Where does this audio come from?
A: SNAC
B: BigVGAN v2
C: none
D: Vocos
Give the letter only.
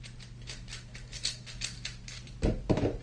C